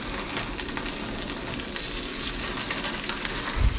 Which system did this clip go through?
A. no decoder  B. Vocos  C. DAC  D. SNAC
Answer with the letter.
A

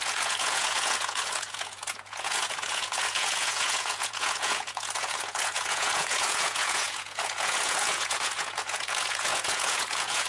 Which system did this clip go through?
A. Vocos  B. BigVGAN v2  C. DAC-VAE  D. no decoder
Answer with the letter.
A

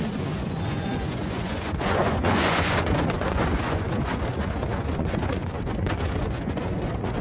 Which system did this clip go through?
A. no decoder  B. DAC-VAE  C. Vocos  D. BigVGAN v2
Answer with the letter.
C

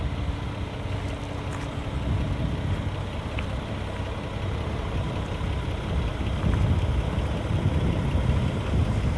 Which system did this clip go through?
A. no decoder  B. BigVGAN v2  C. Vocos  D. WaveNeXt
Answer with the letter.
A